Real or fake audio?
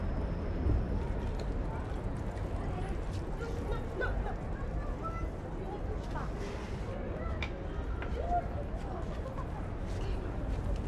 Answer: real